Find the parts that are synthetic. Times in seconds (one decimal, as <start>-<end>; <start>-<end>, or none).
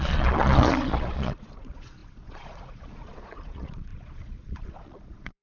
0.0-5.4